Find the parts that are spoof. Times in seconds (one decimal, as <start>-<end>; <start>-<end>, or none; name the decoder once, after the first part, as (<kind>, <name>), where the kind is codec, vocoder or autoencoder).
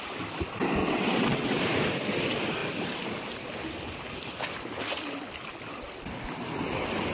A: 0.8-1.6 (vocoder, WaveNeXt)